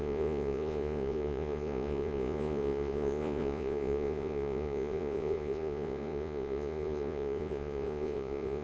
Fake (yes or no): yes